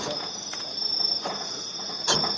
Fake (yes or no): yes